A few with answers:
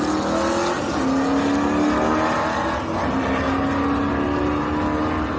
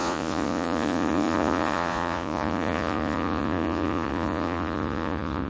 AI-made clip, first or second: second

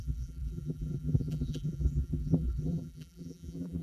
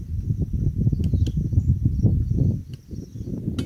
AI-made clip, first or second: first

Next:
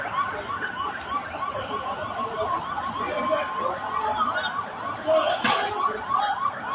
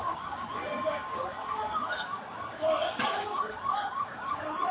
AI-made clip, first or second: second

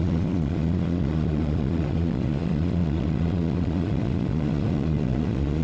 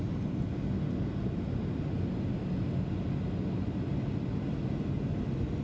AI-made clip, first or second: first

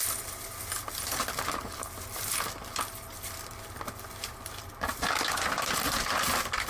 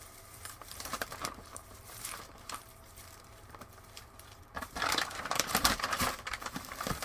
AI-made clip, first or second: second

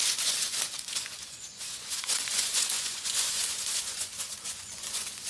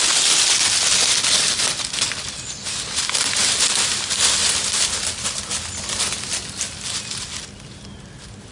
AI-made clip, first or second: first